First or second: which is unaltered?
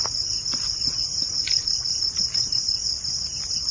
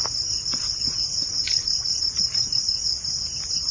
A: second